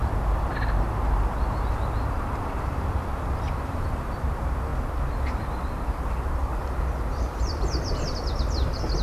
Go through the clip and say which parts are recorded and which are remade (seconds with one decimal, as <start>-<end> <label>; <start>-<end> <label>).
0.0-4.7 remade; 4.7-7.4 recorded; 7.4-9.0 remade